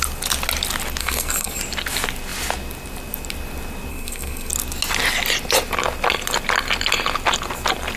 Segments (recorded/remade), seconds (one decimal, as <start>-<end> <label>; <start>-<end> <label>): 0.0-1.0 recorded; 1.0-1.6 remade; 1.6-3.9 recorded; 3.9-4.5 remade; 4.5-8.0 recorded